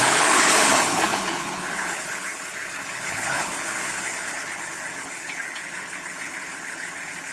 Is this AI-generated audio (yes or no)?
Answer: yes